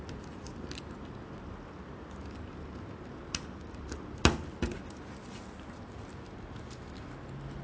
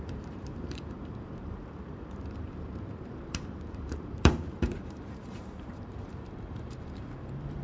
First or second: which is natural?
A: first